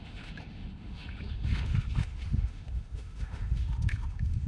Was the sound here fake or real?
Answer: fake